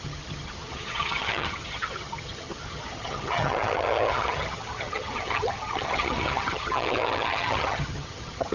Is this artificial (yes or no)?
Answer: yes